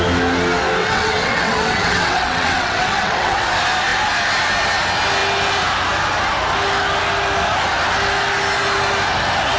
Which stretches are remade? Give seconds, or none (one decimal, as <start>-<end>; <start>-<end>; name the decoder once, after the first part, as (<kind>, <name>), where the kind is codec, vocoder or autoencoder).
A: 0.8-3.5 (vocoder, WaveNeXt)

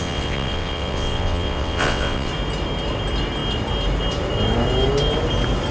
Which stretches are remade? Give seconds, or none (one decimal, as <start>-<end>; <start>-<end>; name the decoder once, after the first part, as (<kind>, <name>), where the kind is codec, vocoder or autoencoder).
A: 0.0-2.3 (vocoder, WaveNeXt)

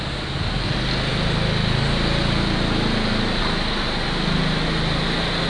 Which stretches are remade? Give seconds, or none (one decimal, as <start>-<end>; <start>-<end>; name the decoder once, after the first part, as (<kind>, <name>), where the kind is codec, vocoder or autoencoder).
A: none

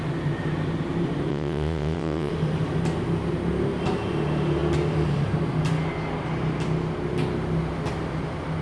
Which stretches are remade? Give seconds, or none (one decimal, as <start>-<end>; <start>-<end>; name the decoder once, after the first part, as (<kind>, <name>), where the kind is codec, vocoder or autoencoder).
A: 1.3-2.3 (vocoder, WaveNeXt)